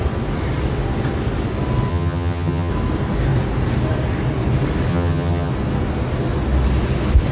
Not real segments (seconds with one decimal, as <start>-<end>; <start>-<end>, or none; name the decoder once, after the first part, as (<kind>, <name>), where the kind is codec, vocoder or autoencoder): 1.9-2.7 (vocoder, HiFi-GAN); 4.9-5.5